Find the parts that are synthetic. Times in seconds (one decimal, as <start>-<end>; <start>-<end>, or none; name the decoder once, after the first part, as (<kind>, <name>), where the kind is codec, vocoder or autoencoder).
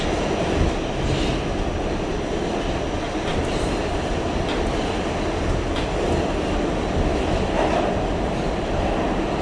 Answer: 3.3-4.1 (vocoder, BigVGAN v2)